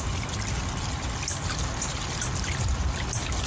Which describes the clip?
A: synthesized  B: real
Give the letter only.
B